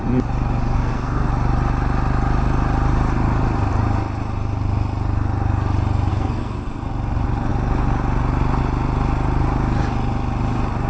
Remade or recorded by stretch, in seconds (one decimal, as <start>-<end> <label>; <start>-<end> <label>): 0.0-0.7 recorded; 0.7-1.3 remade; 1.3-6.1 recorded; 6.1-6.8 remade; 6.8-10.9 recorded